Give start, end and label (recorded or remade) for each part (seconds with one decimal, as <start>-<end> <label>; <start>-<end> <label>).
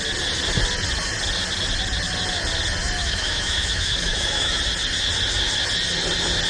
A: 0.0-3.0 recorded; 3.0-4.6 remade; 4.6-6.5 recorded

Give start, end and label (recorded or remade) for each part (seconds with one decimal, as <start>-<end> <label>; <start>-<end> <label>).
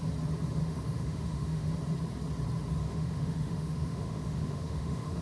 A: 0.0-0.6 recorded; 0.6-1.7 remade; 1.7-2.8 recorded; 2.8-5.2 remade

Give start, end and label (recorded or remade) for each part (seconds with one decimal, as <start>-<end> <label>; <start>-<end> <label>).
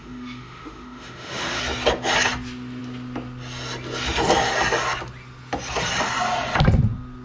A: 0.0-1.6 remade; 1.6-7.2 recorded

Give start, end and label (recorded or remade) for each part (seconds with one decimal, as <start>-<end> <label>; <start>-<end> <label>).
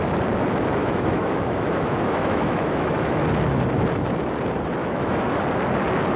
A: 0.0-0.8 recorded; 0.8-3.2 remade; 3.2-4.8 recorded; 4.8-5.3 remade; 5.3-6.2 recorded